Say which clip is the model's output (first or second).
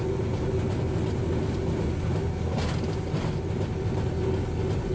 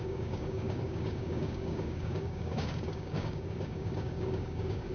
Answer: second